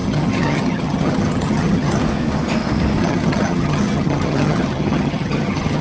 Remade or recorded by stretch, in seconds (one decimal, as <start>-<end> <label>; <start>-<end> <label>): 0.0-2.0 remade; 2.0-3.0 recorded; 3.0-5.8 remade